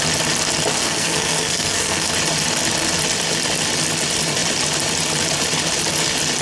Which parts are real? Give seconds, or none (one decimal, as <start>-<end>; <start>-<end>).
0.0-0.7; 2.1-6.4